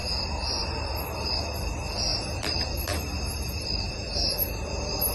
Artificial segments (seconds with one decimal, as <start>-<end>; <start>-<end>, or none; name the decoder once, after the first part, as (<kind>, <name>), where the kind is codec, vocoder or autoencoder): 0.0-1.3 (vocoder, BigVGAN v2); 2.1-3.9